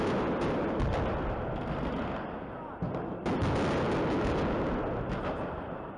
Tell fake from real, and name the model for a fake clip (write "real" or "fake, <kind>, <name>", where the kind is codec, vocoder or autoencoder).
real